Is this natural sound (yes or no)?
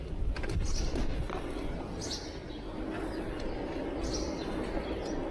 yes